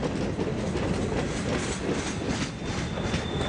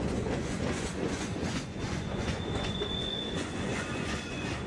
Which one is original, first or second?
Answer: first